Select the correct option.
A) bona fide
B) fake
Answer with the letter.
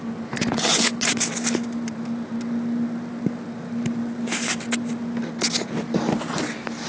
A